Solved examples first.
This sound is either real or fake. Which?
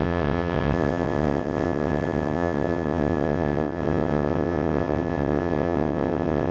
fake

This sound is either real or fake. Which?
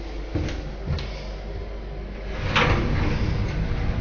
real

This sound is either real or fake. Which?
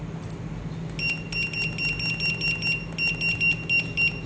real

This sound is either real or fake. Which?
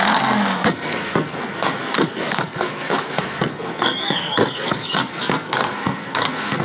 fake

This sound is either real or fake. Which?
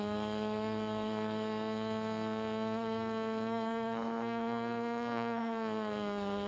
fake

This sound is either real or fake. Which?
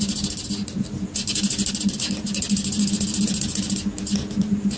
real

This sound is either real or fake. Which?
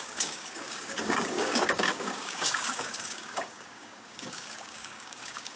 fake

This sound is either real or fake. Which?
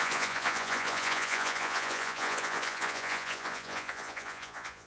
fake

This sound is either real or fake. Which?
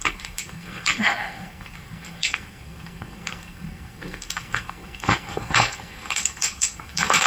fake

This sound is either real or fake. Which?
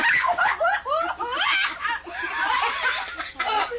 real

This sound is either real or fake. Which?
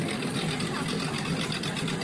real